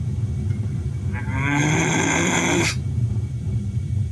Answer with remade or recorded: remade